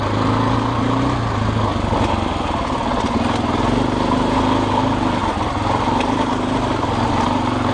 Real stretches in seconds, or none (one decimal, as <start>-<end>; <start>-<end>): 0.0-7.7